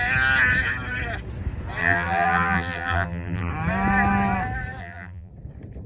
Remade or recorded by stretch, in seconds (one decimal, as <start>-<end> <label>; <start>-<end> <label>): 0.0-1.8 recorded; 1.8-3.5 remade; 3.5-4.8 recorded; 4.8-5.3 remade; 5.3-5.9 recorded